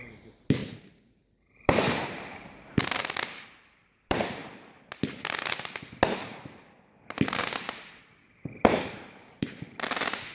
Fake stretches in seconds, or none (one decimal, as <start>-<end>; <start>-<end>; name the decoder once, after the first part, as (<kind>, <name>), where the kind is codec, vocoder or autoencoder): 0.0-4.4 (vocoder, BigVGAN v2); 7.9-10.3